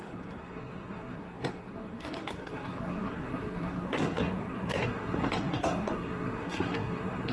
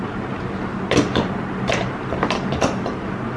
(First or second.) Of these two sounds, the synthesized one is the first